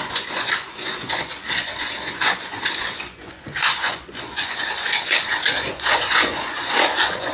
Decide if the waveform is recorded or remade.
remade